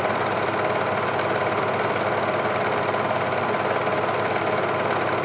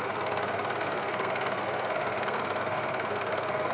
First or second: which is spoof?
second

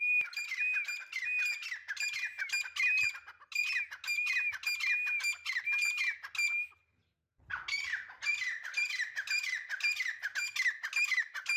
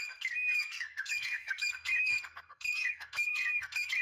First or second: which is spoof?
second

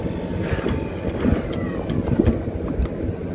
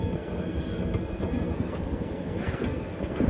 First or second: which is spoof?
second